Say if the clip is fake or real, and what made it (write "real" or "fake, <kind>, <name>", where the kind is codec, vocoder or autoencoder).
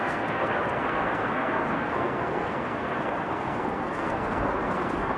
fake, codec, SNAC